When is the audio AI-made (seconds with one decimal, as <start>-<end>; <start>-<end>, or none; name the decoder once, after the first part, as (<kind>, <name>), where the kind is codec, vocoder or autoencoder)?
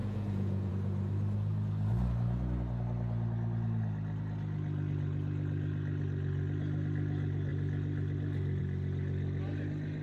0.0-0.7 (vocoder, Vocos)